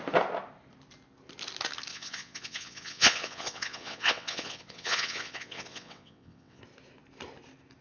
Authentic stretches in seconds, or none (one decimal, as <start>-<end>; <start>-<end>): 0.0-1.9; 6.6-7.8